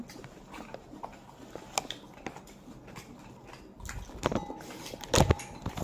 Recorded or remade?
recorded